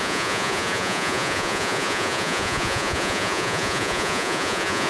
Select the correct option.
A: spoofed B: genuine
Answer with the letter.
A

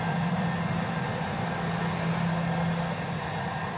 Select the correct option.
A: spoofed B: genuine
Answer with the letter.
B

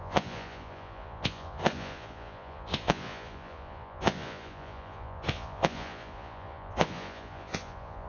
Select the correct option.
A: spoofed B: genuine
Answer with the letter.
A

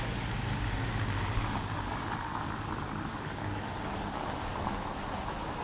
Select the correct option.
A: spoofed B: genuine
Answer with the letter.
B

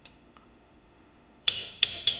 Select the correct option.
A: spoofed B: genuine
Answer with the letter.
A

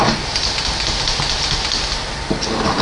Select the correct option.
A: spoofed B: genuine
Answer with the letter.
B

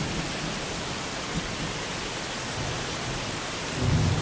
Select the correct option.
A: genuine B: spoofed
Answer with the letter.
A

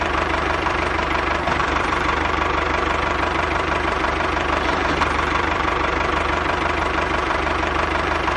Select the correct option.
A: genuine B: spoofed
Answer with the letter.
B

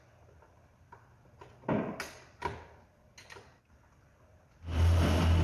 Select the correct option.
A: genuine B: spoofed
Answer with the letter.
A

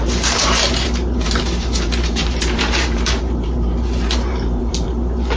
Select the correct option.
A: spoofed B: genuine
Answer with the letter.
A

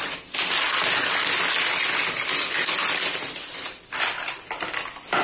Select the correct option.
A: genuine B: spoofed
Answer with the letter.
A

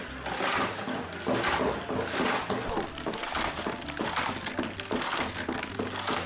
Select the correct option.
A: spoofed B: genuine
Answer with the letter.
B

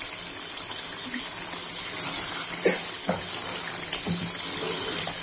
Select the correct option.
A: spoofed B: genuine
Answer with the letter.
B